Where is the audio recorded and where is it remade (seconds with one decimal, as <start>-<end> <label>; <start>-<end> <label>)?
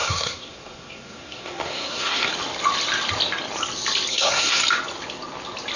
0.0-2.3 remade; 2.3-4.1 recorded; 4.1-4.6 remade; 4.6-5.8 recorded